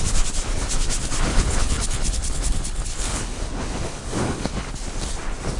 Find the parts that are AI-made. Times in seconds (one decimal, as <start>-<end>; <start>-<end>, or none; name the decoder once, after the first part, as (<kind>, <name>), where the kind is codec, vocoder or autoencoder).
1.3-4.7 (codec, HILCodec)